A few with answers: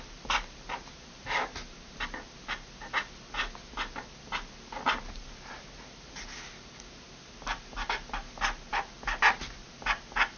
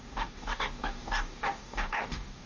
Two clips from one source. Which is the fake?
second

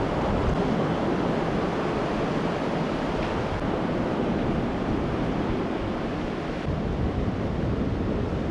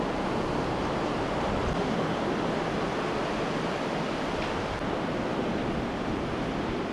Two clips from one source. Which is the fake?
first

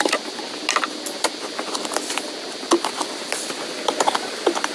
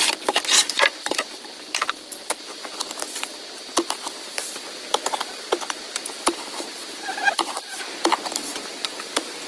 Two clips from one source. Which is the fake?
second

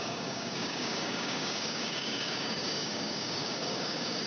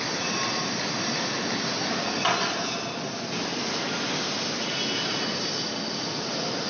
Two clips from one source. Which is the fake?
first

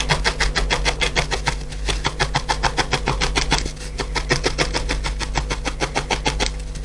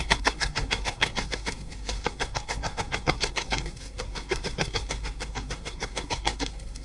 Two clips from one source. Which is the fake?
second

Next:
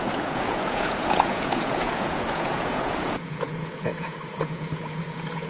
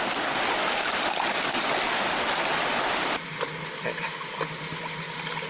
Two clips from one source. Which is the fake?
first